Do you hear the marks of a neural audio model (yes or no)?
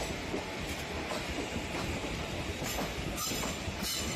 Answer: no